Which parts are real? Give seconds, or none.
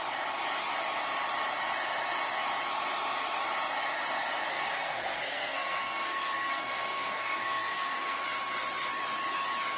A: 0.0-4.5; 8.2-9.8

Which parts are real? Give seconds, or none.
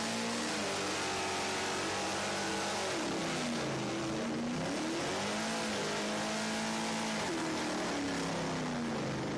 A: 0.0-9.4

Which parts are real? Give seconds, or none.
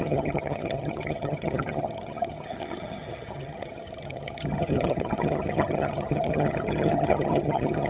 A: none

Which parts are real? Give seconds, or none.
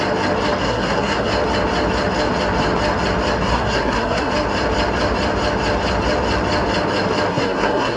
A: 0.0-0.6; 1.3-3.5; 4.3-7.3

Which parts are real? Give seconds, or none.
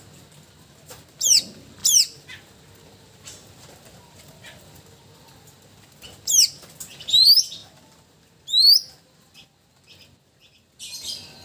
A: 0.0-11.4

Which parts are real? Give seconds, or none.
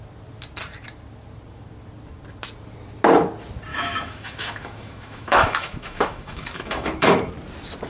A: 0.0-3.7; 7.3-7.9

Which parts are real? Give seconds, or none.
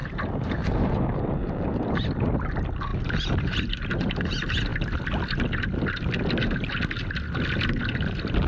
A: 2.0-2.9; 4.1-8.5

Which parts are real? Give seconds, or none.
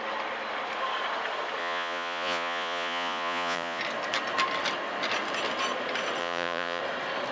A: 0.0-1.6; 3.8-6.2; 6.8-7.3